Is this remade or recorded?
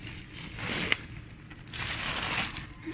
recorded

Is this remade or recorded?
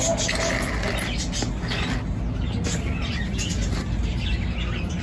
recorded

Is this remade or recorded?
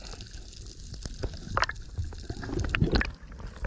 recorded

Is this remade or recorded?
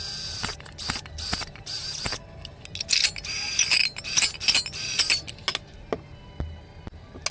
recorded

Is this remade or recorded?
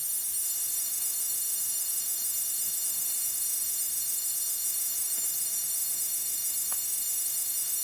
remade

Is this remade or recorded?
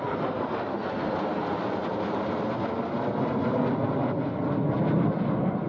recorded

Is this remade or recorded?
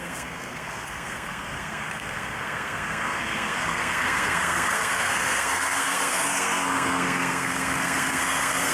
remade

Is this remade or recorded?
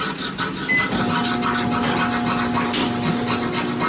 recorded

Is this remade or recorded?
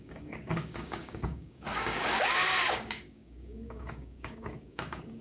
remade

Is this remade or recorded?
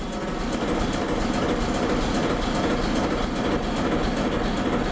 recorded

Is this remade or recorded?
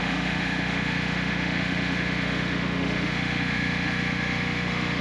remade